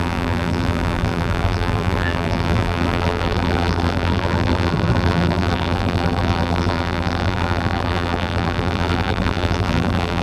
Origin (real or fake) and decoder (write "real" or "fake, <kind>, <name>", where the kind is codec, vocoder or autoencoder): fake, vocoder, BigVGAN v2